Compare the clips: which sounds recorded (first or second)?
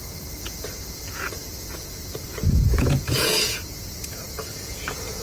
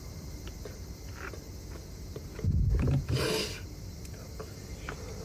second